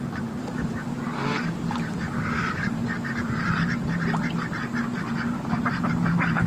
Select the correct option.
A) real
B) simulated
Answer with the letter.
B